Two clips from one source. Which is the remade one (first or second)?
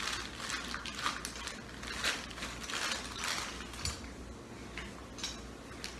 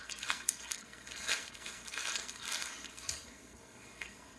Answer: second